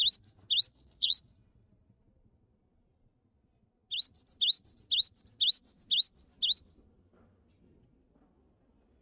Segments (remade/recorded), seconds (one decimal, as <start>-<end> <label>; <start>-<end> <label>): 0.0-0.7 recorded; 0.7-1.3 remade; 1.3-9.0 recorded